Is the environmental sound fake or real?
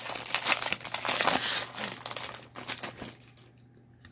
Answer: real